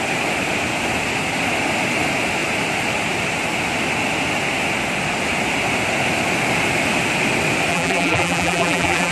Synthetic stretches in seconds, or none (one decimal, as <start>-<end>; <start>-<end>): 7.7-9.1